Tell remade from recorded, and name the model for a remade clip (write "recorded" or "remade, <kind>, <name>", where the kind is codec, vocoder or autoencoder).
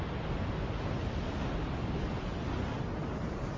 recorded